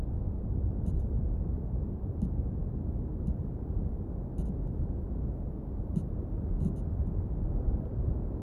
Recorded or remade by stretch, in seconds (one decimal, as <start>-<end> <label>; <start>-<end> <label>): 0.0-8.4 recorded